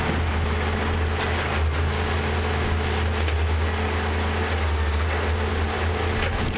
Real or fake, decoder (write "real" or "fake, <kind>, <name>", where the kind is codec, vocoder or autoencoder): real